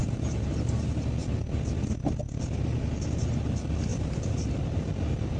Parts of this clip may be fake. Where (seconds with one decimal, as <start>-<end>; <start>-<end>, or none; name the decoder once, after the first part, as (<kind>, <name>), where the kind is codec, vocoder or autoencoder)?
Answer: 0.0-0.7 (vocoder, BigVGAN v2); 3.9-5.4